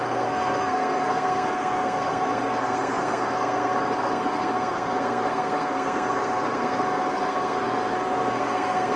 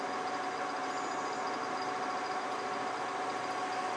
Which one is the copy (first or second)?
first